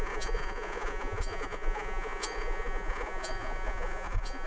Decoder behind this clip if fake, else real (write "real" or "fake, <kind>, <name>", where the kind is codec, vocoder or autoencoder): fake, vocoder, Vocos